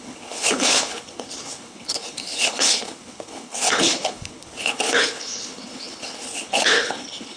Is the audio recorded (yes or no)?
no